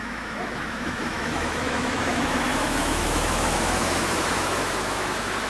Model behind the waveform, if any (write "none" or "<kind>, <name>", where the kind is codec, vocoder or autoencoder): autoencoder, DAC-VAE